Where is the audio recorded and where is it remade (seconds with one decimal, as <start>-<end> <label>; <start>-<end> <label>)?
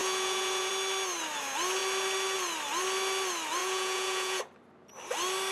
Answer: 0.0-0.7 remade; 0.7-3.6 recorded; 3.6-4.4 remade; 4.4-5.5 recorded